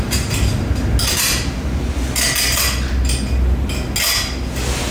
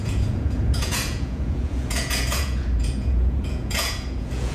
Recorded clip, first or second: first